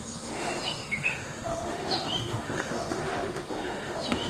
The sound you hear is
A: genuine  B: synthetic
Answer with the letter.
B